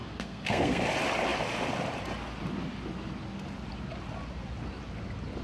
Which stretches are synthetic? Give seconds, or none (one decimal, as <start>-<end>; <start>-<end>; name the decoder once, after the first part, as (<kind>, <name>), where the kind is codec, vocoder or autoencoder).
0.0-0.8 (codec, SNAC)